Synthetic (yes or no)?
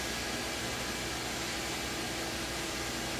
no